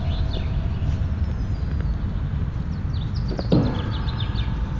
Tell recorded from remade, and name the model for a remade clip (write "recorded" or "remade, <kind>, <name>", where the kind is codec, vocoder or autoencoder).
recorded